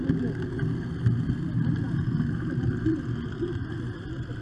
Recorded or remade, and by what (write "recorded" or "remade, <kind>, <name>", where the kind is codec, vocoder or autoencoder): recorded